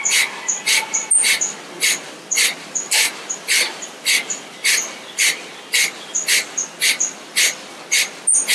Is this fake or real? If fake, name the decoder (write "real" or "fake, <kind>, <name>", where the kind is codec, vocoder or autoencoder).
real